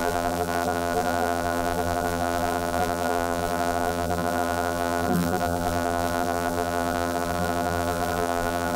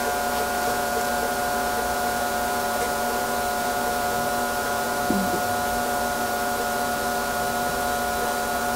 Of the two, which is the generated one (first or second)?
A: first